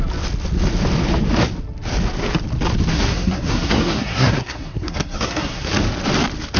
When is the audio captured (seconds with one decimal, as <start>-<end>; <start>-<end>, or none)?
0.0-2.9; 5.7-6.6